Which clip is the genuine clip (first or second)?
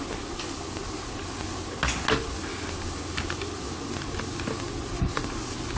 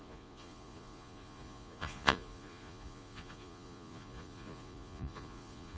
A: first